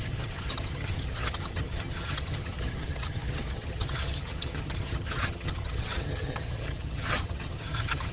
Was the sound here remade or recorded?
remade